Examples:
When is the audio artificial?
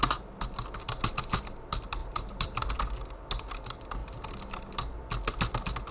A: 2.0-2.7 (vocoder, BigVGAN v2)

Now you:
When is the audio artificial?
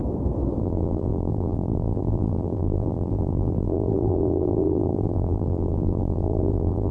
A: 0.6-6.9 (vocoder, BigVGAN v2)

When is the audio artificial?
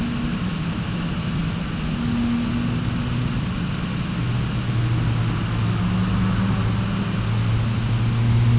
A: 3.2-3.7 (vocoder, BigVGAN v2)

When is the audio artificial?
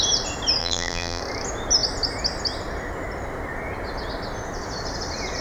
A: 0.6-1.2 (vocoder, BigVGAN v2)